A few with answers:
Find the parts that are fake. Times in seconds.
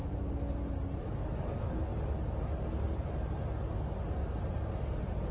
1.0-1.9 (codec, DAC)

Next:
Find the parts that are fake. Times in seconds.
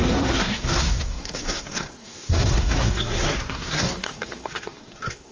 0.0-5.3 (codec, SNAC)